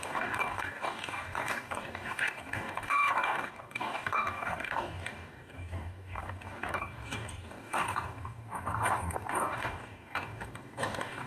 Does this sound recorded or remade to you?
remade